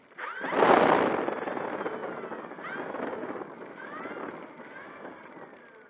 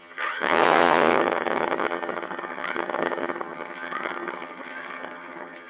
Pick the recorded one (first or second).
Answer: first